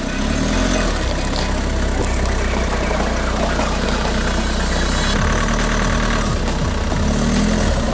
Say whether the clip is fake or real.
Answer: real